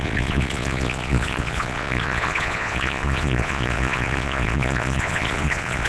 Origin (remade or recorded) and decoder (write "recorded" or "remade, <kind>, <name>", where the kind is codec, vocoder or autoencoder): remade, vocoder, Vocos